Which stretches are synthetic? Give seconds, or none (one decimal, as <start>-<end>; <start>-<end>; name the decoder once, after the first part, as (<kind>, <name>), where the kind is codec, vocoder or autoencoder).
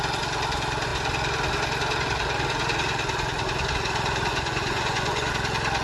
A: 4.3-5.3 (vocoder, Vocos)